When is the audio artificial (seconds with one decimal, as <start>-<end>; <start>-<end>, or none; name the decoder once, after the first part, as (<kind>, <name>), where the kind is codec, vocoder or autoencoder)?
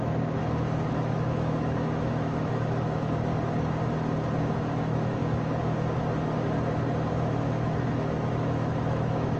0.0-3.3 (autoencoder, DAC-VAE); 4.6-5.2; 7.1-9.4